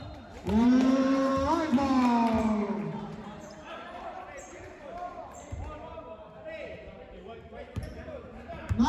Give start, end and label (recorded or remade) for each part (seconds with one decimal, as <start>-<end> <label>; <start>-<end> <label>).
0.0-1.3 remade; 1.3-2.4 recorded; 2.4-8.9 remade